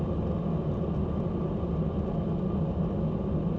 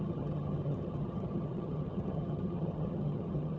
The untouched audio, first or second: first